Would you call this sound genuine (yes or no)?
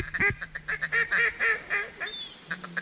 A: yes